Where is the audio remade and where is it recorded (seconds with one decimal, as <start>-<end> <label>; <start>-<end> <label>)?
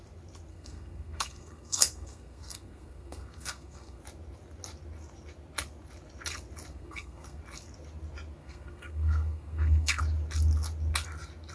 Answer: 0.0-0.5 recorded; 0.5-4.0 remade; 4.0-6.7 recorded; 6.7-7.4 remade; 7.4-8.4 recorded; 8.4-10.0 remade; 10.0-11.5 recorded